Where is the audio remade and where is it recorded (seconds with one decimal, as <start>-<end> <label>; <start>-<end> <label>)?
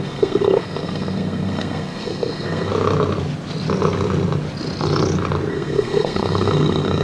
0.0-2.7 remade; 2.7-5.5 recorded; 5.5-7.0 remade